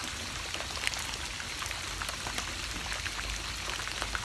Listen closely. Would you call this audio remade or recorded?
recorded